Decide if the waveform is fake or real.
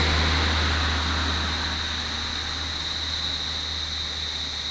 real